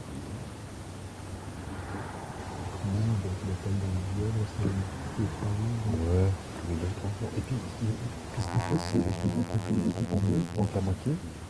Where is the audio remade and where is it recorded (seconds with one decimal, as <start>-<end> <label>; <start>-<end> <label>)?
0.0-8.4 recorded; 8.4-10.7 remade; 10.7-11.5 recorded